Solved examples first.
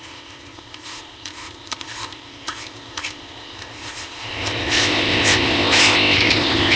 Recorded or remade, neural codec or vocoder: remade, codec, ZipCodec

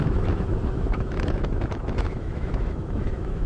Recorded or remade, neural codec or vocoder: remade, autoencoder, DAC-VAE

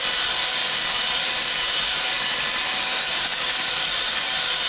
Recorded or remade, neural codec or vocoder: recorded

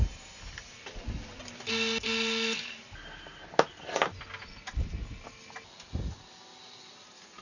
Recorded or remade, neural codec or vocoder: recorded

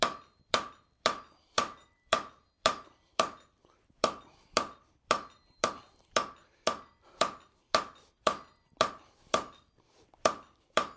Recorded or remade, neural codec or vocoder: remade, vocoder, BigVGAN v2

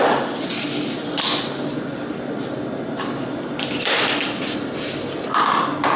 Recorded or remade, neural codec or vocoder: recorded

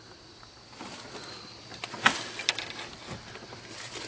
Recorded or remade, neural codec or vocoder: recorded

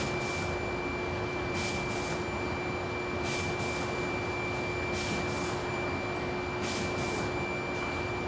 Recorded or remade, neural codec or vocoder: recorded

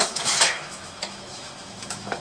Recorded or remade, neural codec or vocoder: remade, autoencoder, DAC-VAE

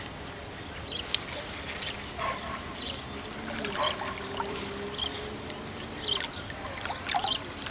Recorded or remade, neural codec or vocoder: recorded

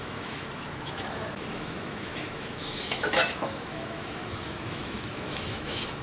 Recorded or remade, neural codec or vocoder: remade, autoencoder, DAC-VAE